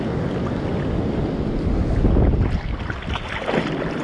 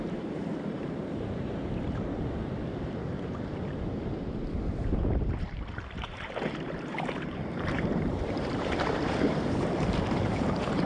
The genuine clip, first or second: first